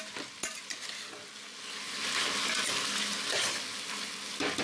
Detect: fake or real real